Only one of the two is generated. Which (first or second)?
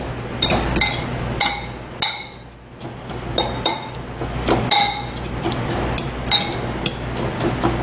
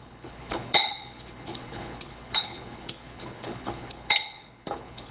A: second